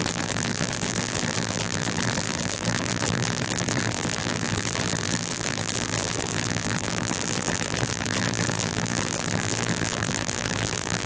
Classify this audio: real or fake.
fake